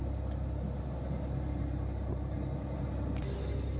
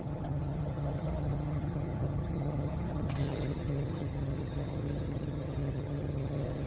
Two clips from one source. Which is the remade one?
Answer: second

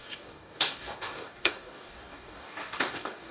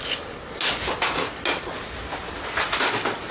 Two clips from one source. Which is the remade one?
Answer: first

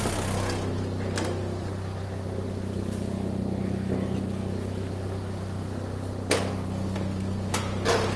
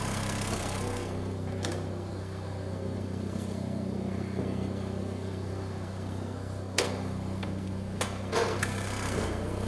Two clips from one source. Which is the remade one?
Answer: second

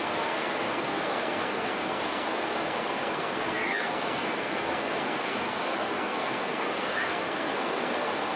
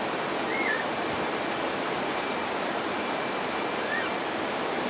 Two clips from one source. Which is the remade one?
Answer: first